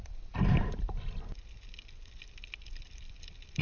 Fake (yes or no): yes